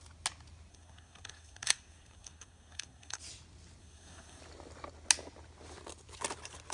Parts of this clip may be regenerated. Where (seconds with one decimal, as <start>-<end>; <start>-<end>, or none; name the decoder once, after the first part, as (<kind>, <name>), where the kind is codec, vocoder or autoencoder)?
0.7-3.2 (codec, SNAC); 3.8-4.4